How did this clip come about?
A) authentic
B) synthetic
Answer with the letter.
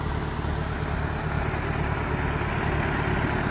A